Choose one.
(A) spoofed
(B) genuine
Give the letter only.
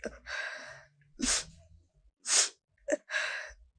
B